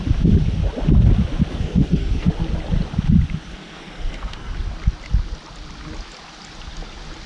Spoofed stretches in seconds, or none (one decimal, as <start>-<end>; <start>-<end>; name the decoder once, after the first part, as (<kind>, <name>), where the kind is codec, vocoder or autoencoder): 1.5-2.3 (codec, SNAC); 3.5-4.5